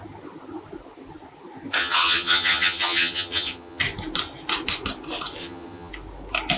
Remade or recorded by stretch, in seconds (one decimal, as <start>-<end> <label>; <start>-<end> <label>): 0.0-1.8 recorded; 1.8-3.8 remade; 3.8-5.4 recorded; 5.4-5.9 remade; 5.9-6.6 recorded